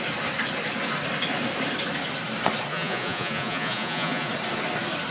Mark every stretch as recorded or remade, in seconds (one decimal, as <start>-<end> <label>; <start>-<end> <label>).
0.0-2.7 recorded; 2.7-4.3 remade; 4.3-5.1 recorded

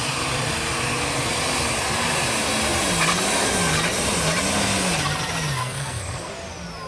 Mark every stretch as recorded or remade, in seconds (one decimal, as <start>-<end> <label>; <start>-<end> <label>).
0.0-5.6 recorded; 5.6-6.3 remade; 6.3-6.9 recorded

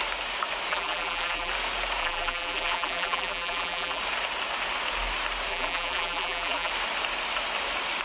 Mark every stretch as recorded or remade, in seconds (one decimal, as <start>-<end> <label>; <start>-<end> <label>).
0.0-0.7 recorded; 0.7-1.5 remade; 1.5-2.0 recorded; 2.0-4.0 remade; 4.0-5.5 recorded; 5.5-6.7 remade; 6.7-8.0 recorded